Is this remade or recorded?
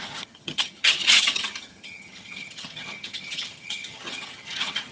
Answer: remade